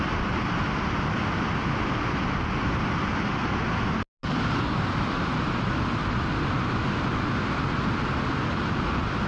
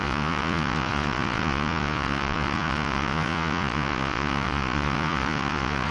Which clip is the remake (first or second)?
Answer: second